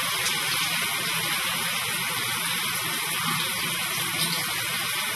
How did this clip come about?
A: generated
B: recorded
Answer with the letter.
B